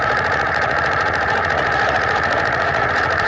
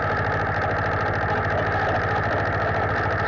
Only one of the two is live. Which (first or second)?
second